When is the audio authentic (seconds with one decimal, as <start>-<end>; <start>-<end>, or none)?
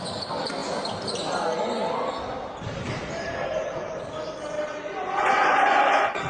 0.0-4.8